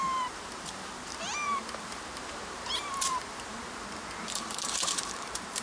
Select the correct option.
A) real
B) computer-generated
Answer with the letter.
B